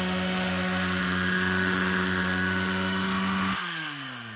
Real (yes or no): no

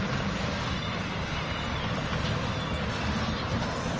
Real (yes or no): yes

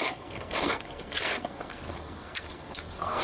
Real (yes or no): no